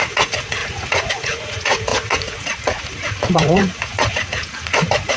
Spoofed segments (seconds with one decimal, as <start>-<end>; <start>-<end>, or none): 0.0-5.2